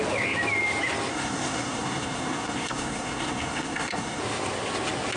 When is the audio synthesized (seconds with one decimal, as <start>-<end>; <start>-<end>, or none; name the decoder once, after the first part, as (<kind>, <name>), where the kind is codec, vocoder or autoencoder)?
1.1-4.2 (codec, SNAC)